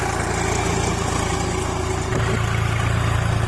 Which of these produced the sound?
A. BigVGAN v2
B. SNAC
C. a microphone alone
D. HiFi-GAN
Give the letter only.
C